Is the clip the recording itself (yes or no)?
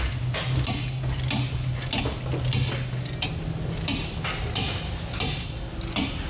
yes